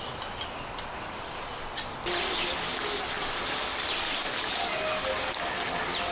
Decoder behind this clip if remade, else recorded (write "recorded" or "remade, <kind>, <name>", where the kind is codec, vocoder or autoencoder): recorded